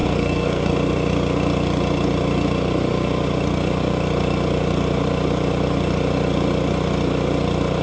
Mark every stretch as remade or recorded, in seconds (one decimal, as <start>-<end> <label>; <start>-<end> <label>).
0.0-0.7 remade; 0.7-7.8 recorded